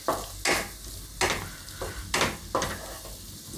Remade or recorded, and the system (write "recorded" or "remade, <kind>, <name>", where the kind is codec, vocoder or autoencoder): recorded